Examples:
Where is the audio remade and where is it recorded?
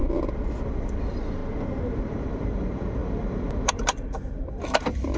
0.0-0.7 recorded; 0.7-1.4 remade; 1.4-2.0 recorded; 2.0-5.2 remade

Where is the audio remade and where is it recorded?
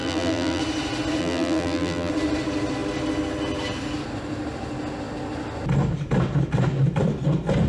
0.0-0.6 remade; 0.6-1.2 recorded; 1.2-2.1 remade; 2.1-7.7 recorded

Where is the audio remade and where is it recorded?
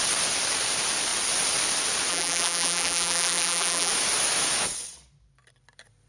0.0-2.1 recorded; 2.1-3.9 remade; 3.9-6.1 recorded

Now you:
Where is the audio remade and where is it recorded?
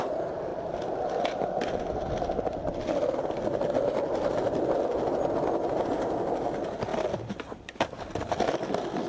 0.0-6.9 recorded; 6.9-8.3 remade; 8.3-9.1 recorded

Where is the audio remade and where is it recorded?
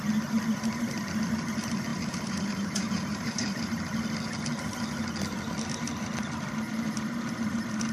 0.0-1.9 recorded; 1.9-3.8 remade; 3.8-7.9 recorded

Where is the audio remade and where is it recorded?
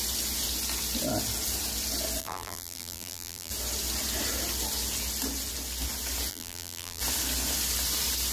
0.0-2.2 recorded; 2.2-3.5 remade; 3.5-6.3 recorded; 6.3-7.0 remade; 7.0-8.3 recorded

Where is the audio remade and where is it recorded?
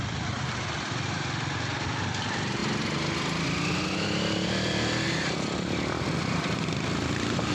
0.0-7.5 recorded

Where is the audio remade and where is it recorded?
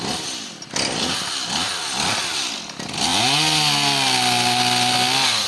0.0-5.5 recorded